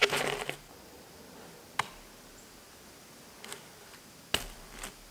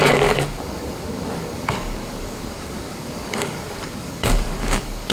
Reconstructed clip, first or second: second